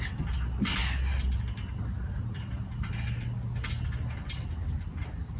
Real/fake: real